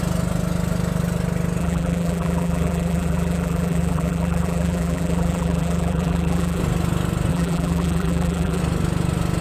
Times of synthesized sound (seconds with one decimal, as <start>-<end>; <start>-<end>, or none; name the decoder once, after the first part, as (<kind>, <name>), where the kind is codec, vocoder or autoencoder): 1.6-6.6 (vocoder, BigVGAN v2); 7.3-8.6